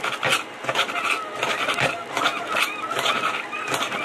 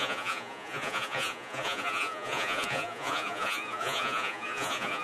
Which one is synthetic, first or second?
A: second